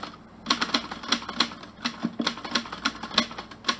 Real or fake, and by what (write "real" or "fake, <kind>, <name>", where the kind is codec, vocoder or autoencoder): real